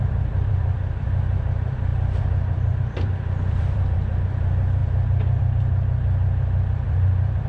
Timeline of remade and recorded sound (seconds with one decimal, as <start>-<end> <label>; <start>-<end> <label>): 0.0-7.5 remade